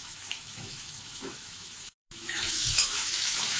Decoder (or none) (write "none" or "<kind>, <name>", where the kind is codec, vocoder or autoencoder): autoencoder, DAC-VAE